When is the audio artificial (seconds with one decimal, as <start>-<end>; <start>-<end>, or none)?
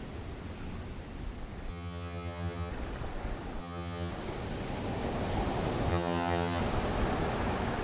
1.7-2.7; 3.6-4.1; 5.9-6.6